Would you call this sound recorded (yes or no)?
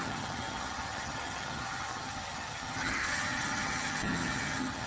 no